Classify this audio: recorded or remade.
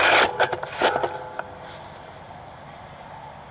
recorded